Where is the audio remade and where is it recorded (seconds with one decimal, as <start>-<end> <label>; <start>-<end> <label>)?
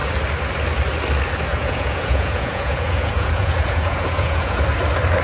0.0-1.5 recorded; 1.5-4.6 remade; 4.6-5.2 recorded